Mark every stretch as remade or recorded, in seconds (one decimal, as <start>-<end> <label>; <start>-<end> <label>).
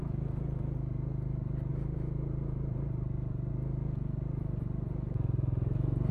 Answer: 0.0-1.7 recorded; 1.7-3.5 remade; 3.5-6.1 recorded